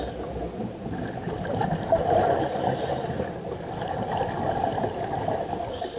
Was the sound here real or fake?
real